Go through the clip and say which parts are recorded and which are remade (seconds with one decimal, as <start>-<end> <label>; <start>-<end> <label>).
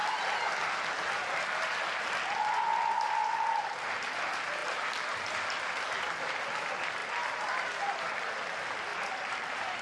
0.0-7.0 recorded; 7.0-8.0 remade; 8.0-8.9 recorded; 8.9-9.8 remade